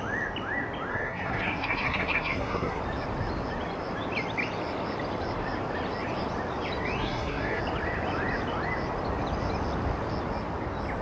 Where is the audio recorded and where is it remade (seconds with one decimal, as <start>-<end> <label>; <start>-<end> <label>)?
0.0-0.9 recorded; 0.9-2.8 remade; 2.8-7.0 recorded; 7.0-7.6 remade; 7.6-11.0 recorded